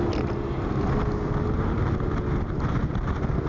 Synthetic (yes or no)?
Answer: no